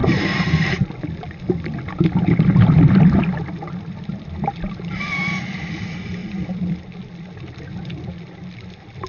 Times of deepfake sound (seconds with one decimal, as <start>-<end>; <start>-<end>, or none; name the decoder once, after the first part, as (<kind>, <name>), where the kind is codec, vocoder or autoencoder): 2.8-9.1 (vocoder, BigVGAN v2)